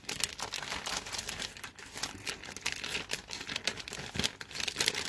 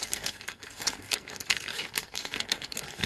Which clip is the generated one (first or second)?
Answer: second